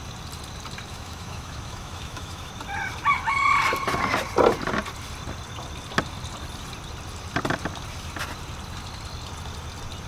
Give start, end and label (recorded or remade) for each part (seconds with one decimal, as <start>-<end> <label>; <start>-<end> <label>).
0.0-0.9 recorded; 0.9-2.5 remade; 2.5-10.1 recorded